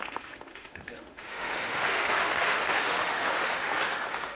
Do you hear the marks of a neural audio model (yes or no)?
yes